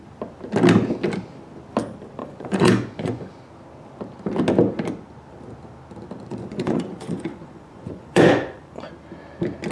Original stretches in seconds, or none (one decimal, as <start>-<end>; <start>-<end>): 0.0-2.2; 3.3-6.3; 8.9-9.7